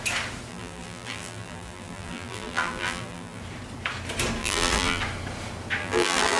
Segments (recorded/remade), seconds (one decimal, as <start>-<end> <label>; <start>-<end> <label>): 0.0-0.5 recorded; 0.5-3.4 remade; 3.4-4.4 recorded; 4.4-5.0 remade; 5.0-5.8 recorded; 5.8-6.4 remade